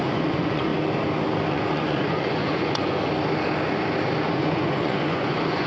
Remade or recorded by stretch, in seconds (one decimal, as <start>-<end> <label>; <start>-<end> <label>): 0.0-0.7 remade; 0.7-1.5 recorded; 1.5-3.0 remade; 3.0-4.3 recorded; 4.3-5.7 remade